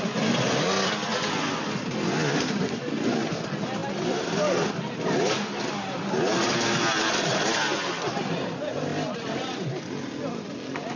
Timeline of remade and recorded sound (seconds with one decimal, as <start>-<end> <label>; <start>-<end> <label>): 0.0-11.0 recorded